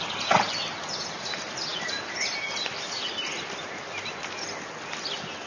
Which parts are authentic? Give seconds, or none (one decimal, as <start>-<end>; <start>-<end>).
0.0-5.5

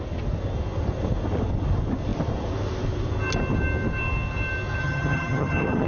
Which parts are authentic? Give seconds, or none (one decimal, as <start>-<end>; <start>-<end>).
0.0-4.8